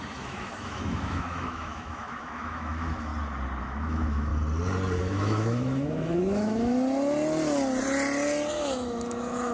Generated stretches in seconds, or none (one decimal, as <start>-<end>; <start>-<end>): 0.0-3.1; 3.6-4.3; 5.0-6.7; 8.5-9.5